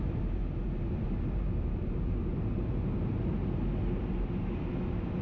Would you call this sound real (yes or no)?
yes